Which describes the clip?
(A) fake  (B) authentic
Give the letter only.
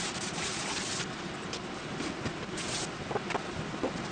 B